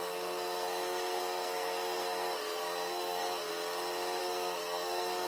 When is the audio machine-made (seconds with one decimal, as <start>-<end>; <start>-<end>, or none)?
0.0-3.4; 4.2-5.3